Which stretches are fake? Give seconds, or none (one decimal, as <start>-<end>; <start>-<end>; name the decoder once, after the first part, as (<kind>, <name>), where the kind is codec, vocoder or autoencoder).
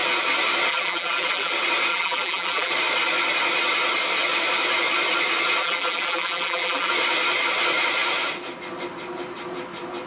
0.7-1.5 (vocoder, BigVGAN v2); 1.9-2.7; 5.6-6.9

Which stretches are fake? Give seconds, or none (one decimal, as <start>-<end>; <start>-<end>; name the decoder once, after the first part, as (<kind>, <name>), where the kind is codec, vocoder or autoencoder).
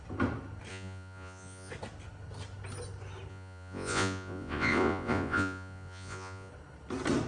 0.7-1.7 (vocoder, Vocos); 3.3-6.5